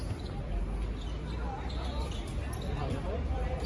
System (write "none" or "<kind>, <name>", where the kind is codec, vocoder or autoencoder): none